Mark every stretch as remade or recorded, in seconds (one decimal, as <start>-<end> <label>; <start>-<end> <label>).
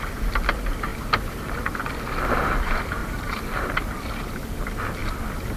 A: 0.0-3.0 recorded; 3.0-3.7 remade; 3.7-5.6 recorded